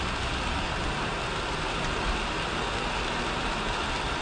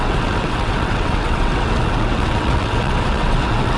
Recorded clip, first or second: first